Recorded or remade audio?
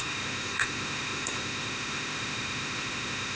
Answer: remade